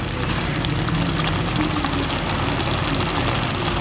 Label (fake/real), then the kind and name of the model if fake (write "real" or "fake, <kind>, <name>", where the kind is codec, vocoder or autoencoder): real